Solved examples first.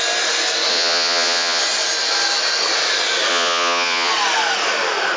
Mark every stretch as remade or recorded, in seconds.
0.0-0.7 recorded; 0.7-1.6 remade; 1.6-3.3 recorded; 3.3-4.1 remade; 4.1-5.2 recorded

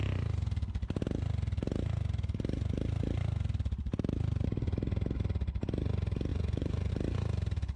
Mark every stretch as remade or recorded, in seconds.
0.0-6.3 recorded; 6.3-6.9 remade; 6.9-7.8 recorded

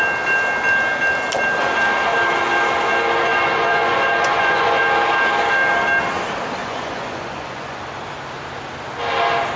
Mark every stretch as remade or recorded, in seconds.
0.0-3.3 recorded; 3.3-4.8 remade; 4.8-6.6 recorded; 6.6-7.8 remade; 7.8-9.6 recorded

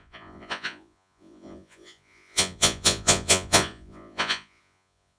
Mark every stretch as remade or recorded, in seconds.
0.0-5.2 remade